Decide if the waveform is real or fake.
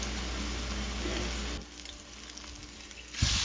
real